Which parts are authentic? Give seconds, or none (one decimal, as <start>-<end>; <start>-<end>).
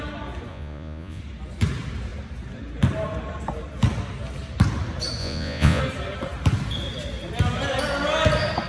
0.0-0.5; 1.2-5.2; 5.8-8.7